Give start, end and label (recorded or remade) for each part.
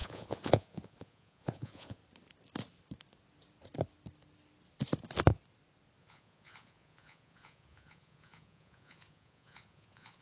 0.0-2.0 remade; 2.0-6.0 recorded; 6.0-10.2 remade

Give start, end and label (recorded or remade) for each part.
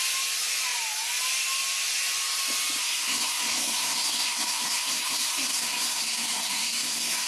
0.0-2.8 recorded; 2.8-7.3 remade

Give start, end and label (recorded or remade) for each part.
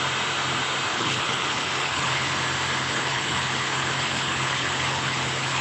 0.0-0.9 recorded; 0.9-2.3 remade; 2.3-2.8 recorded; 2.8-5.6 remade